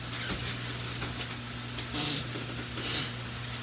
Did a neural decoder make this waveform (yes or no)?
no